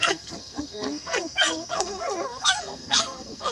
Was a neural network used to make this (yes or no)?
yes